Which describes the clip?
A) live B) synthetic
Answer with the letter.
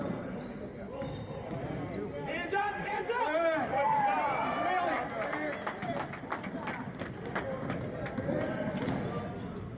A